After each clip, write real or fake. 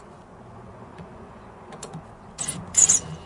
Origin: fake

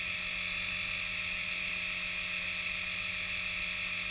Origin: real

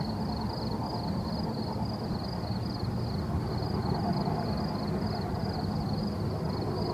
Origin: real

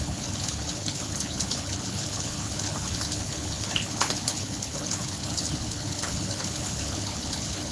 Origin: fake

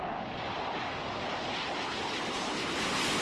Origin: real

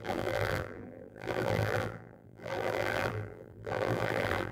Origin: fake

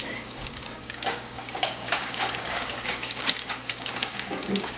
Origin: fake